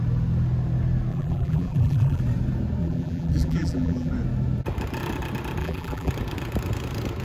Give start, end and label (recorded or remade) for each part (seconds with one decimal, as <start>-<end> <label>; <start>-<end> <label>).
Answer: 0.0-1.1 recorded; 1.1-2.2 remade; 2.2-2.8 recorded; 2.8-4.1 remade; 4.1-5.6 recorded; 5.6-6.1 remade; 6.1-7.2 recorded